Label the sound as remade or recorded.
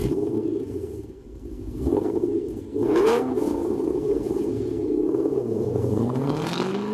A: remade